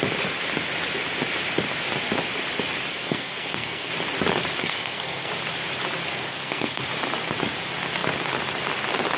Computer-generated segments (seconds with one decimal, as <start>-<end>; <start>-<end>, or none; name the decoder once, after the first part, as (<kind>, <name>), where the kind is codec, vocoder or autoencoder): 2.9-3.9 (codec, SNAC); 4.6-5.3; 6.3-6.8